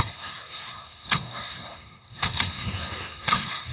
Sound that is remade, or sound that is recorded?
remade